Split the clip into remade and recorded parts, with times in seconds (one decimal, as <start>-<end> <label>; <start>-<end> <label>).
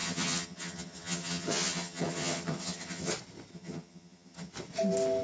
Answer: 0.0-3.1 remade; 3.1-3.5 recorded; 3.5-4.5 remade; 4.5-5.2 recorded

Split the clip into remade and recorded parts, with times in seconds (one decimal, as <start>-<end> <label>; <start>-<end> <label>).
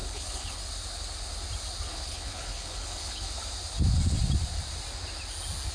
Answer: 0.0-0.6 remade; 0.6-1.9 recorded; 1.9-3.3 remade; 3.3-5.7 recorded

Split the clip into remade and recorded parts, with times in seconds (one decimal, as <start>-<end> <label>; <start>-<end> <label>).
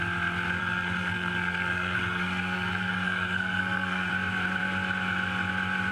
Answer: 0.0-0.6 recorded; 0.6-4.1 remade; 4.1-5.9 recorded